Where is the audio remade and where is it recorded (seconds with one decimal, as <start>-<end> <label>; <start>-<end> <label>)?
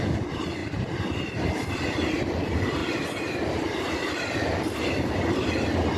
0.0-6.0 recorded